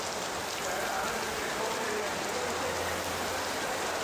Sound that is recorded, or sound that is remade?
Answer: recorded